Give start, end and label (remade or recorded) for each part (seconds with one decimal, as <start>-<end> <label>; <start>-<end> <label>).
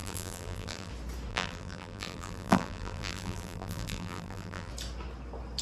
0.0-0.9 remade; 0.9-1.3 recorded; 1.3-4.7 remade; 4.7-5.6 recorded